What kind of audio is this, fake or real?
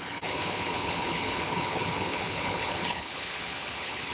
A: fake